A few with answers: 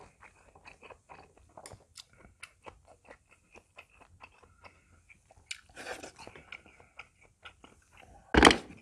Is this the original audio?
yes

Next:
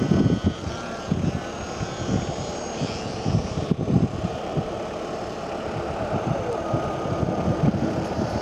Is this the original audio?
no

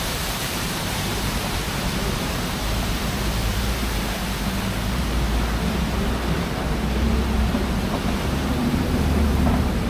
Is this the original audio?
no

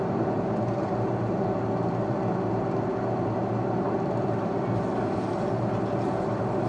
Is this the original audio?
yes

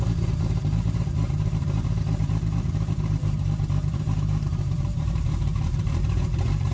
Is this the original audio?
no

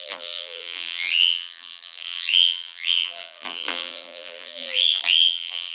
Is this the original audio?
no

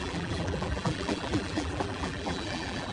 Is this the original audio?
no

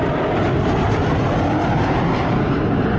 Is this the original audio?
yes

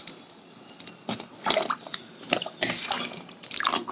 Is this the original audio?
yes